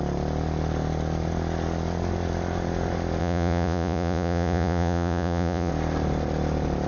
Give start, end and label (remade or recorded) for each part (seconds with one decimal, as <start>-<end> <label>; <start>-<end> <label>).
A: 0.0-3.2 recorded; 3.2-5.7 remade; 5.7-6.9 recorded